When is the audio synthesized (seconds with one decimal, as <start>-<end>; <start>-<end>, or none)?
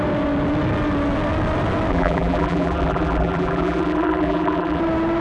1.9-4.8